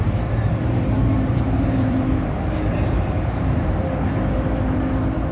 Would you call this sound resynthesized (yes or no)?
yes